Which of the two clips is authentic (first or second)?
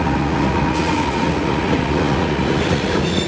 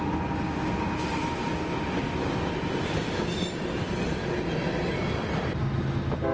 second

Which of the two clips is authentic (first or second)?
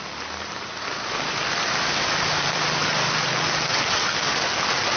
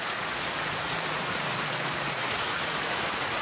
first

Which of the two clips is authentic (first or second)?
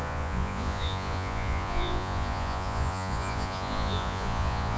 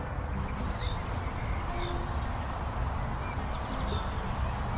second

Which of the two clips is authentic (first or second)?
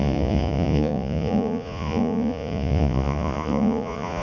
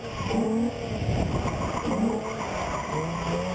second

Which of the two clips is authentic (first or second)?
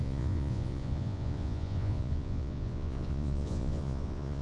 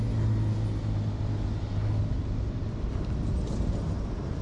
second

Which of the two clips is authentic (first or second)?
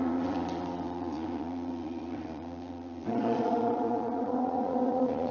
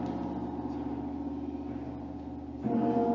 second